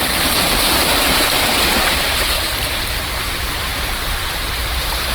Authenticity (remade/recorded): remade